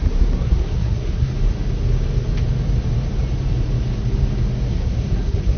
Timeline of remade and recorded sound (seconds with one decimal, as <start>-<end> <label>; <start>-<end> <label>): 0.0-1.3 remade; 1.3-4.7 recorded; 4.7-5.6 remade